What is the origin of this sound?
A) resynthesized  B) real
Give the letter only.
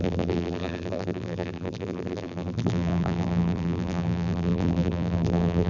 A